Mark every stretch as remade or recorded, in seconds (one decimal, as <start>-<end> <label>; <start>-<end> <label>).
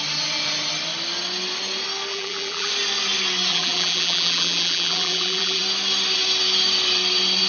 0.0-2.1 recorded; 2.1-2.7 remade; 2.7-3.5 recorded; 3.5-5.6 remade; 5.6-7.5 recorded